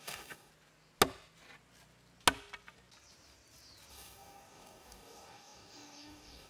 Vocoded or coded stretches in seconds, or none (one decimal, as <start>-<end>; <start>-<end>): 0.0-0.5; 3.9-6.5